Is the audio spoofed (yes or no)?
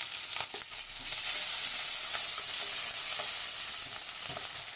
no